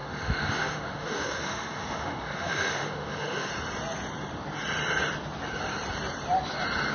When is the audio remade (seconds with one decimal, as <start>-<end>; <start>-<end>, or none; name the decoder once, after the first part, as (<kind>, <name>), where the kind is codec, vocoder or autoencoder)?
0.0-3.5 (autoencoder, DAC-VAE)